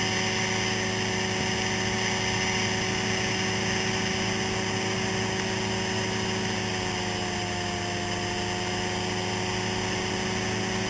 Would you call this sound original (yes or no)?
yes